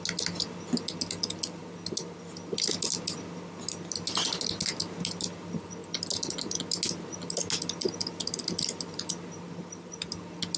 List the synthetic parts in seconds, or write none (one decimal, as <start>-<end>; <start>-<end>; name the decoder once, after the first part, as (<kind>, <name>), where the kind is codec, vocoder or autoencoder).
none